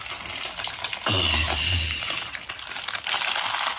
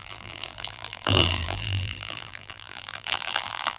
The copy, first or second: second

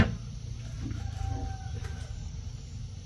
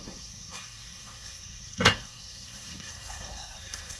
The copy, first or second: second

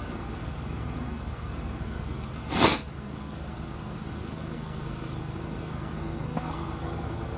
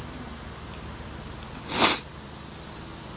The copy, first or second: first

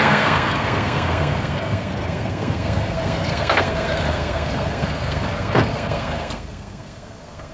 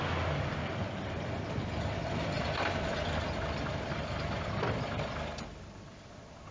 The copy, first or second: first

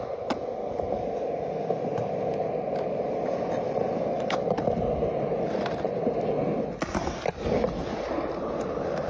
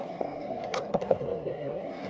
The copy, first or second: second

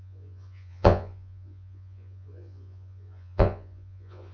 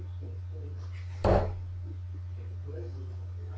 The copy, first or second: first